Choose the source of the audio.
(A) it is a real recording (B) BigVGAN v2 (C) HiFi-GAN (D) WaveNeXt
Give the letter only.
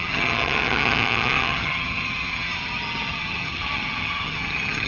C